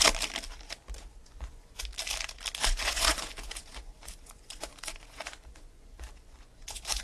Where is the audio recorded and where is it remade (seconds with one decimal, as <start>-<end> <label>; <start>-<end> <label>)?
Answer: 0.0-1.2 recorded; 1.2-1.8 remade; 1.8-2.6 recorded; 2.6-7.0 remade